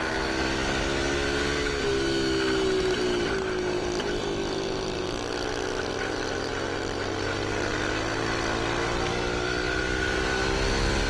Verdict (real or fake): real